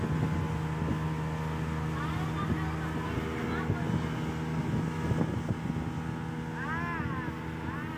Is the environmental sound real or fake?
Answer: real